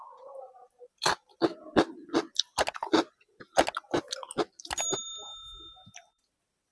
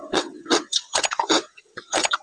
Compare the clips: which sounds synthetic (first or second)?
second